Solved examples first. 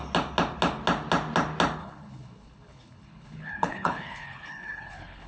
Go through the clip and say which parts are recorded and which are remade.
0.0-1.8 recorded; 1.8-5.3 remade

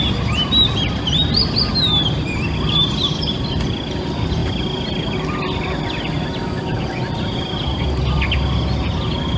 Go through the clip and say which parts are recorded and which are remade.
0.0-9.4 recorded

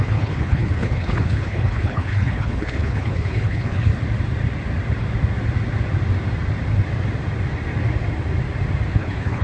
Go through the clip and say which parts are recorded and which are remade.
0.0-3.9 remade; 3.9-8.9 recorded; 8.9-9.4 remade